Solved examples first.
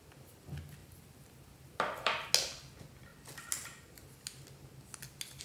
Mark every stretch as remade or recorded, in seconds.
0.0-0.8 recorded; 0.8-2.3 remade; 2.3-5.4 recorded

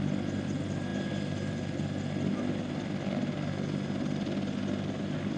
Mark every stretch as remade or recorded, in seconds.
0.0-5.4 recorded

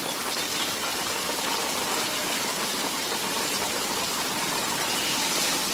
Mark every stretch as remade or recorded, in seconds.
0.0-4.6 recorded; 4.6-5.2 remade; 5.2-5.7 recorded